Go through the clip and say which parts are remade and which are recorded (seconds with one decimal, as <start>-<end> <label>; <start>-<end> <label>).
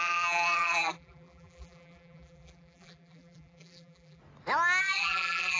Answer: 0.0-4.2 remade; 4.2-4.8 recorded; 4.8-5.6 remade